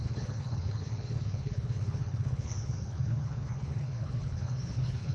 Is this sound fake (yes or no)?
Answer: yes